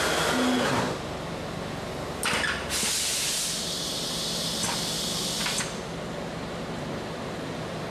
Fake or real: real